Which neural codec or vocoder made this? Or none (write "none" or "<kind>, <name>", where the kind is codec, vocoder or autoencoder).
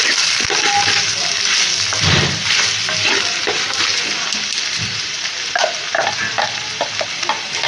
none